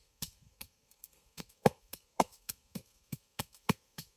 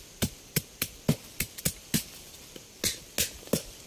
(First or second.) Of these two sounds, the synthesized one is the first